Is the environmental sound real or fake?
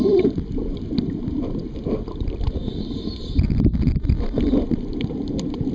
fake